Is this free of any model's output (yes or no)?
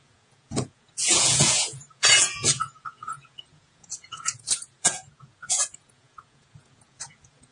no